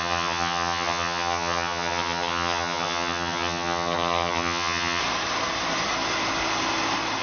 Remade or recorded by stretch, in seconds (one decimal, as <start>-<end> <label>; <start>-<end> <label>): 0.0-5.0 remade; 5.0-7.2 recorded

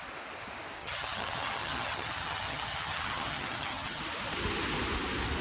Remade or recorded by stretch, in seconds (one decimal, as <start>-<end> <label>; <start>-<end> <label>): 0.0-0.8 recorded; 0.8-4.0 remade; 4.0-5.4 recorded

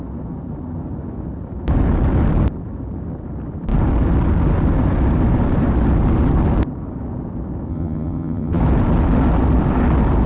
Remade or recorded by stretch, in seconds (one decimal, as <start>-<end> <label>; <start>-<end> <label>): 0.0-7.7 recorded; 7.7-8.6 remade; 8.6-10.3 recorded

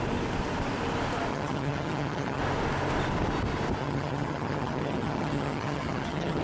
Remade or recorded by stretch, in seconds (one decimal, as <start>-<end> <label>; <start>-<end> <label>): 0.0-1.3 recorded; 1.3-2.4 remade; 2.4-3.8 recorded; 3.8-6.4 remade

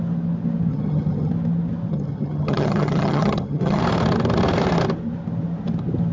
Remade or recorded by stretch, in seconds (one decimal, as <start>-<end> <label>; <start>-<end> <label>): 0.0-0.7 recorded; 0.7-1.3 remade; 1.3-1.9 recorded; 1.9-3.8 remade; 3.8-6.1 recorded

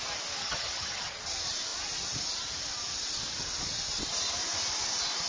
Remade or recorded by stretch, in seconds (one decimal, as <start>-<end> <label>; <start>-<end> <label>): 0.0-0.4 recorded; 0.4-1.2 remade; 1.2-5.3 recorded

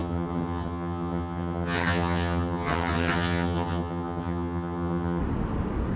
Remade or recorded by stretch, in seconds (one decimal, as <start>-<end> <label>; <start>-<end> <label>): 0.0-5.2 remade; 5.2-6.0 recorded